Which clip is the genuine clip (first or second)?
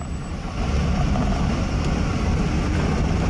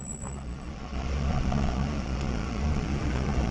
first